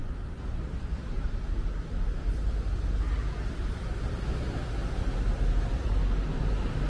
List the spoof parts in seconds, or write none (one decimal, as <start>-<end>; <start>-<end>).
0.0-1.3

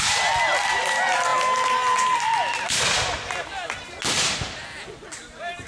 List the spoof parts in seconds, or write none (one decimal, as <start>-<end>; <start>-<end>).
none

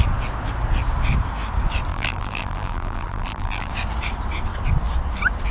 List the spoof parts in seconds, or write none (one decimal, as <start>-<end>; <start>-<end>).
1.9-3.7

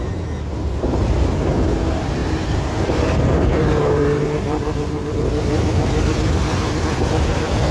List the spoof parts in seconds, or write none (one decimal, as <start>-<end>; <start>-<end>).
2.2-6.8

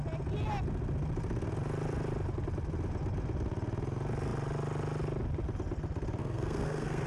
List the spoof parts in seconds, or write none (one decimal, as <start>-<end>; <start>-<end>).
6.2-7.1